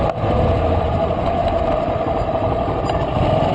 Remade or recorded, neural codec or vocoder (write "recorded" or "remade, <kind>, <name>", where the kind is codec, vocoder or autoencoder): recorded